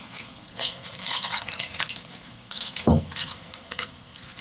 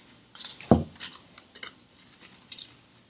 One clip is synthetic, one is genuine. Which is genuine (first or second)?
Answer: second